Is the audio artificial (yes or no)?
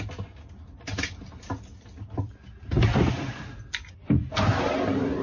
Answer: no